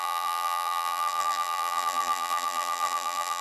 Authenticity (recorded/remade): remade